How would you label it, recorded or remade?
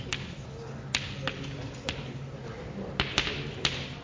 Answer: recorded